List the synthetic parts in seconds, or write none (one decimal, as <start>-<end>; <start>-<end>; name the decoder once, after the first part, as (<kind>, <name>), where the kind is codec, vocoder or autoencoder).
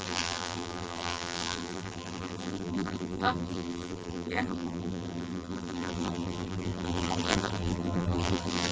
0.0-8.7 (vocoder, BigVGAN v2)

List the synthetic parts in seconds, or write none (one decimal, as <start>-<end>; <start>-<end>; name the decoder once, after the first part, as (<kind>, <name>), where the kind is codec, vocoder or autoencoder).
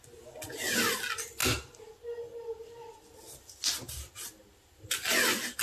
none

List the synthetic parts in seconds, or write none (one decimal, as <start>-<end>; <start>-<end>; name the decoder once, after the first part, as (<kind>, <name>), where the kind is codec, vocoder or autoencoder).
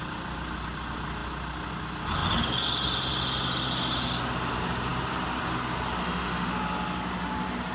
6.0-6.5 (autoencoder, DAC-VAE)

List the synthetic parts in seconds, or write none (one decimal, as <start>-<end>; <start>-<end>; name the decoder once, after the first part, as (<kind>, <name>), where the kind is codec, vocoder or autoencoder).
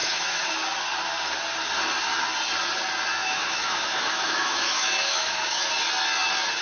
0.0-0.5 (autoencoder, DAC-VAE); 3.2-5.7